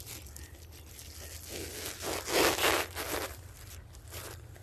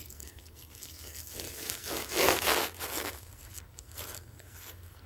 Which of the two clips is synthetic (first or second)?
second